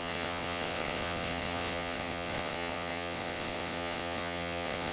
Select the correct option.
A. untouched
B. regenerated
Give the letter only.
B